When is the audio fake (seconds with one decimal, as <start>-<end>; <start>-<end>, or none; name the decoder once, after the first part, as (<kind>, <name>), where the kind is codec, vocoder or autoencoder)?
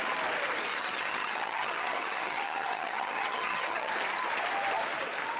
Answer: 0.7-3.9 (vocoder, HiFi-GAN)